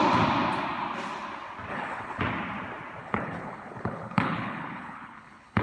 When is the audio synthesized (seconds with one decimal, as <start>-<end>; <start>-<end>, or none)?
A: 1.7-2.2; 3.0-5.6